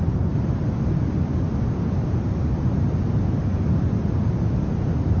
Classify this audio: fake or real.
real